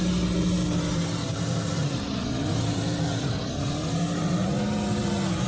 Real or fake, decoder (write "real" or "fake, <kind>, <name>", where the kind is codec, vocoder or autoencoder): real